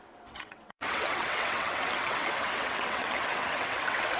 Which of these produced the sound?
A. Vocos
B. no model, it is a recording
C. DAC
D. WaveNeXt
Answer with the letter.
D